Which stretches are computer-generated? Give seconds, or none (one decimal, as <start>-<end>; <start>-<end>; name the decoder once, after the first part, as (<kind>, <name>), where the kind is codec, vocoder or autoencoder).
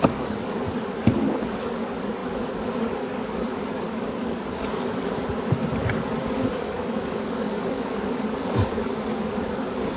0.0-5.2 (codec, DAC); 6.2-10.0